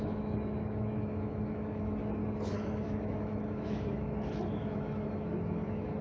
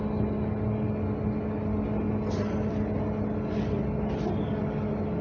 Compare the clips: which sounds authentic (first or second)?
second